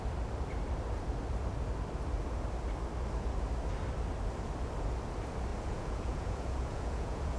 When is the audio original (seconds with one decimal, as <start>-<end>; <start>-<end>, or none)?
0.0-5.5